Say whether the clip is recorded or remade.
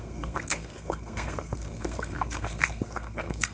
remade